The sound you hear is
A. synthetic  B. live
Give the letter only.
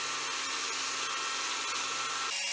B